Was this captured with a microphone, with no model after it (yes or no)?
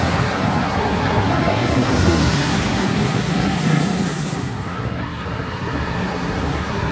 no